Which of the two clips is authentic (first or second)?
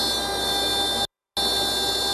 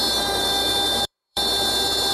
first